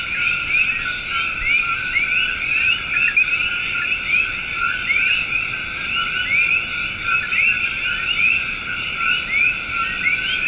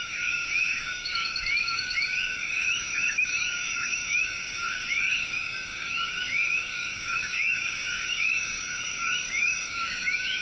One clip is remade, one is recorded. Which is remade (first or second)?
second